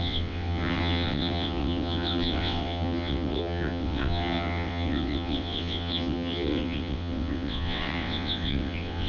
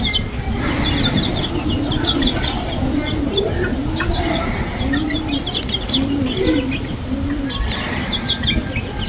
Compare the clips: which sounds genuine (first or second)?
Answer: second